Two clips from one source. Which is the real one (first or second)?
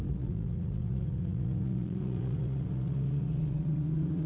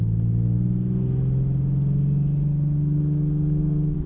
second